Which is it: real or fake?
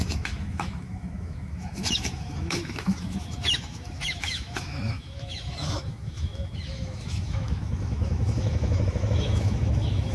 fake